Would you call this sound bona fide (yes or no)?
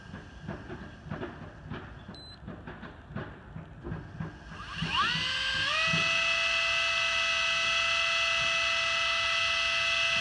yes